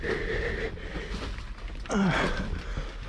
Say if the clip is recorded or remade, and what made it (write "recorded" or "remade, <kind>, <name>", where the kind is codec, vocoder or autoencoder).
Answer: recorded